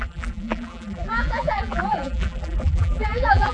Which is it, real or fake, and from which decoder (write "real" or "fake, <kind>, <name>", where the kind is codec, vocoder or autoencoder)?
fake, vocoder, BigVGAN v2